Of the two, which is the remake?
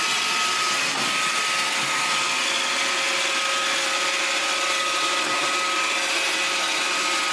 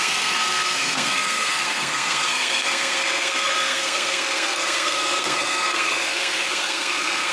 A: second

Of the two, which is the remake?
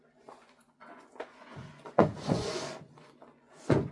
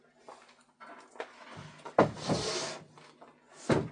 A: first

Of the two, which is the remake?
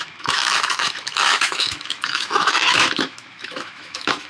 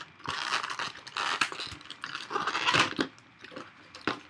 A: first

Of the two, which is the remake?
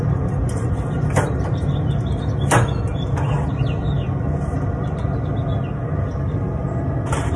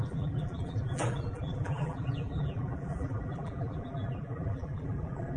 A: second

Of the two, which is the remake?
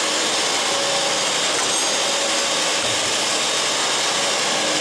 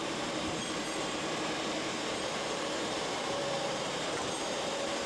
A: second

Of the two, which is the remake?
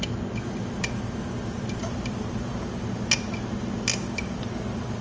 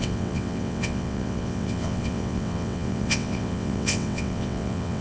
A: second